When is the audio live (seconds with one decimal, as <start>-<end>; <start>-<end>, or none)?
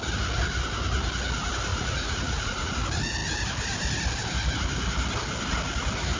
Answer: 0.0-1.7; 2.7-6.2